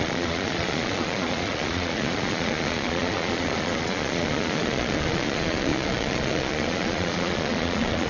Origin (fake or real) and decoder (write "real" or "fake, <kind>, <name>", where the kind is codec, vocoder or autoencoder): fake, vocoder, Vocos